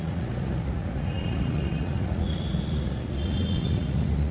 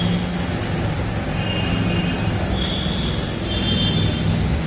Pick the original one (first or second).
second